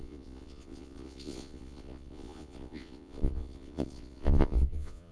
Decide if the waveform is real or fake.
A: fake